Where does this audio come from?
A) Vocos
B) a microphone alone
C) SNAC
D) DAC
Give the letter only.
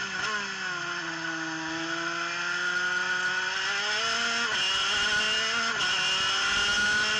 B